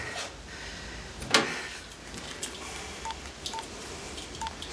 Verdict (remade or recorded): recorded